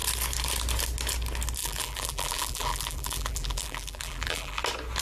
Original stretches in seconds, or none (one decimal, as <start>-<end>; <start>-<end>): 0.0-1.6; 4.6-5.0